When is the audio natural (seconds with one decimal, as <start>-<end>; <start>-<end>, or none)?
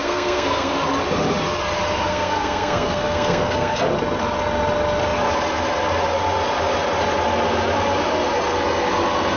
0.7-2.1; 3.8-9.4